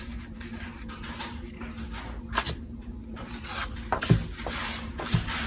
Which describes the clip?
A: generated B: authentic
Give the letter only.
B